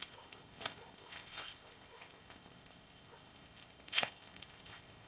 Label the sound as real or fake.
fake